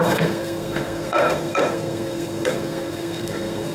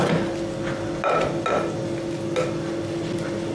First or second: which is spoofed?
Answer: first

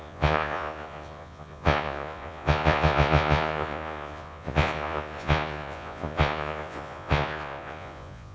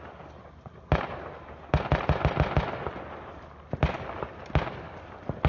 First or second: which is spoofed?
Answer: first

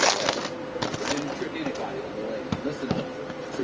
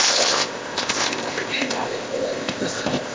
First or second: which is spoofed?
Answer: second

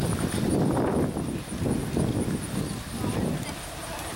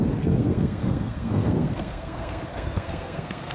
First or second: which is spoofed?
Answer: second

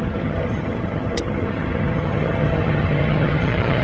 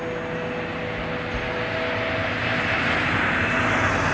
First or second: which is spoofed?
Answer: first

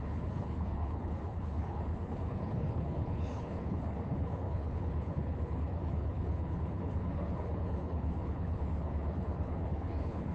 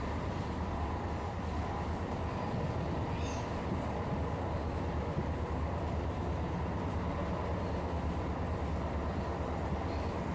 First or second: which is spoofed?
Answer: first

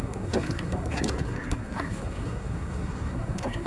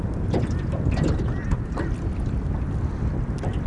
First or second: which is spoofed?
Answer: first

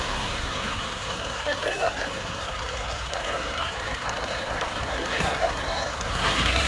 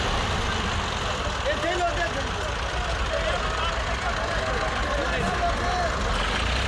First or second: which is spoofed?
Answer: first